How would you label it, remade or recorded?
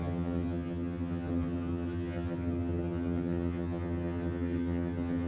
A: remade